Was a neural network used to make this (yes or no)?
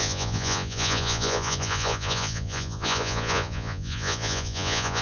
yes